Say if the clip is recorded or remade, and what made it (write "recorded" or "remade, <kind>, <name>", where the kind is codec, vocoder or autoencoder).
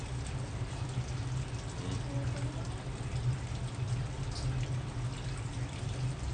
recorded